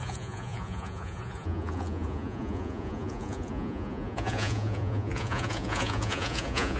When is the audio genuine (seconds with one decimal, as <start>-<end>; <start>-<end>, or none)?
none